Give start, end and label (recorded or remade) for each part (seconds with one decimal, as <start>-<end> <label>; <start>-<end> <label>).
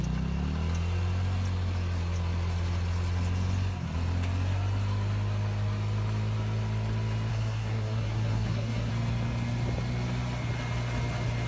0.0-7.3 recorded; 7.3-8.9 remade; 8.9-11.5 recorded